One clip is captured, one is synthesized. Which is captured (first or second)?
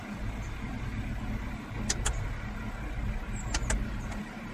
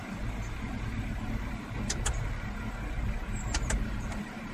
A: first